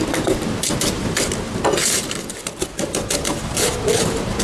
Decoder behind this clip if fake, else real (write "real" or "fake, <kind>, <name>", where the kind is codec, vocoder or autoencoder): real